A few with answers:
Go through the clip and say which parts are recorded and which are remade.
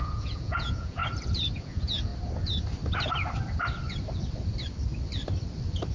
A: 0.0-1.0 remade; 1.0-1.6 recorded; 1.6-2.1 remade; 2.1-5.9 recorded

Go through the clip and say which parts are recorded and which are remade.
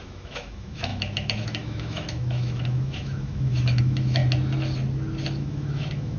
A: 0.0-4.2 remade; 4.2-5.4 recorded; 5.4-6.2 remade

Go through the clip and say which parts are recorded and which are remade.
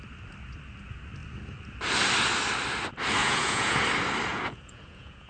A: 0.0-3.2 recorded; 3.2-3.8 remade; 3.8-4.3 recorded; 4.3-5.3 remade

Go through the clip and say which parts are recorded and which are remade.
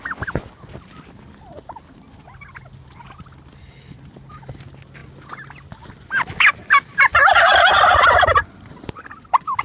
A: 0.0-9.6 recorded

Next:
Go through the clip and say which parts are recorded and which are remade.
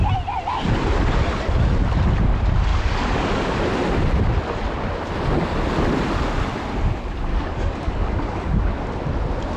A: 0.0-2.7 recorded; 2.7-3.6 remade; 3.6-7.3 recorded; 7.3-8.7 remade; 8.7-9.6 recorded